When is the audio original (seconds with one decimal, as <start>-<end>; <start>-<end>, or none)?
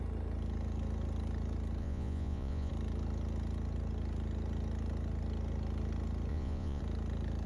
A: 0.0-1.8; 2.7-6.3; 6.8-7.5